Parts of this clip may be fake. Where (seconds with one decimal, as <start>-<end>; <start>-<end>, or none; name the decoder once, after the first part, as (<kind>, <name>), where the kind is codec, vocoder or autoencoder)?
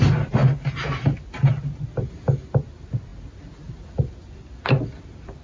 none